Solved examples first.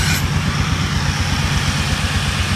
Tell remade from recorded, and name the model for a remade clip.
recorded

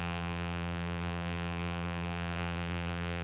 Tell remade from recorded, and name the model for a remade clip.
remade, vocoder, BigVGAN v2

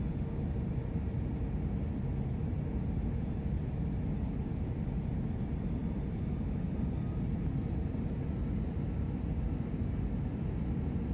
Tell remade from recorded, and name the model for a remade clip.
recorded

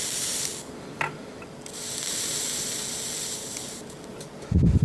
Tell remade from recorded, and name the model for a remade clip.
recorded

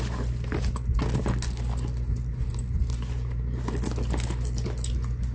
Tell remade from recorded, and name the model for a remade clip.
recorded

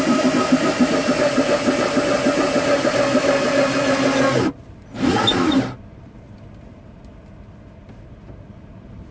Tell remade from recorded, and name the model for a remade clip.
recorded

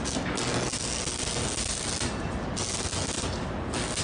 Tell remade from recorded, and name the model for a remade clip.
recorded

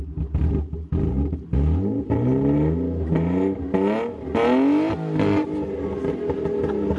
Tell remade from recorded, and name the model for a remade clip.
recorded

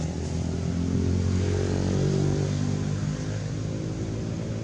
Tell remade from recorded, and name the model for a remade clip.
recorded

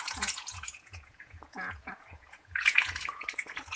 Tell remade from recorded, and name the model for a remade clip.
remade, vocoder, Vocos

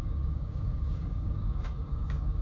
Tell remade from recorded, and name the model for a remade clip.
remade, codec, DAC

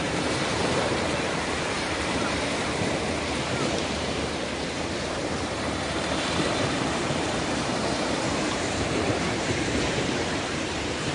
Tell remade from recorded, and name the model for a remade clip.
remade, vocoder, BigVGAN v2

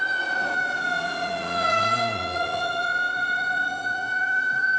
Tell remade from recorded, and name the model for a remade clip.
remade, vocoder, Vocos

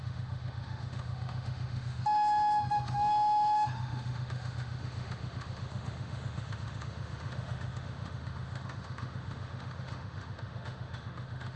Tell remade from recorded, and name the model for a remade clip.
remade, autoencoder, DAC-VAE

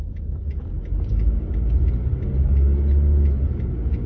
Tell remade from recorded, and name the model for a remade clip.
recorded